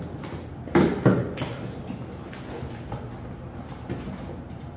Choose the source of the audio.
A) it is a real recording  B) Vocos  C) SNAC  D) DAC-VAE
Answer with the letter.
A